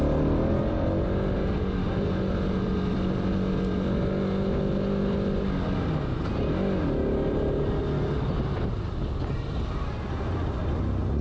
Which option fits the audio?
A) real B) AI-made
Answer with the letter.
A